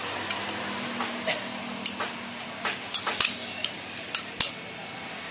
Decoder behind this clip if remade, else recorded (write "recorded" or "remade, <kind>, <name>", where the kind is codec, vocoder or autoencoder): recorded